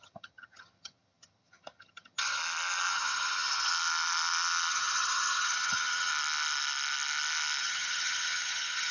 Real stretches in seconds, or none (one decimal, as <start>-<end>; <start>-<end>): 2.4-2.9; 3.7-4.7; 6.1-7.6